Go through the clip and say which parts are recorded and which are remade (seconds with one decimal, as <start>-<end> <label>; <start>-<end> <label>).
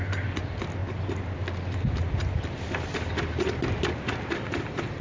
0.0-5.0 recorded